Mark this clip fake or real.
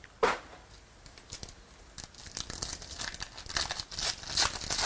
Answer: real